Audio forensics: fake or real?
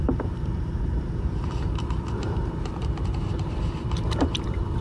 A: fake